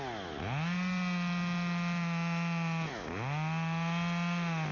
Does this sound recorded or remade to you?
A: recorded